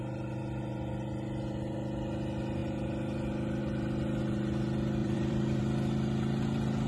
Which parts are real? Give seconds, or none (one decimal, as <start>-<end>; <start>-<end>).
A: 0.0-5.0; 5.6-6.9